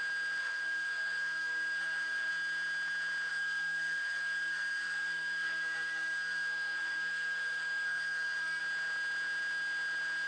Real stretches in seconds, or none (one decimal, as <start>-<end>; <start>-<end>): 0.0-0.4; 2.3-3.3; 8.6-10.3